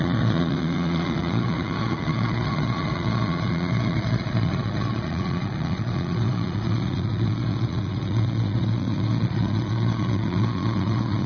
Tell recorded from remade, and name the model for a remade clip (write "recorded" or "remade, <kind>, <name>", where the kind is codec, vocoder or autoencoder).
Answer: remade, vocoder, Vocos